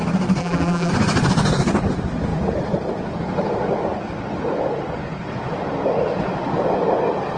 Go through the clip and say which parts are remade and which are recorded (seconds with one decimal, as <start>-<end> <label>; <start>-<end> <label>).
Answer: 0.0-0.4 recorded; 0.4-0.9 remade; 0.9-7.4 recorded